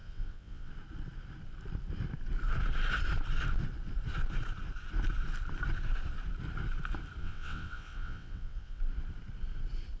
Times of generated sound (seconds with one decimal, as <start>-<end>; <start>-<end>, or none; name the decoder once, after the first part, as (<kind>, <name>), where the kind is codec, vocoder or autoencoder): 0.0-0.7 (vocoder, WaveNeXt); 7.2-8.8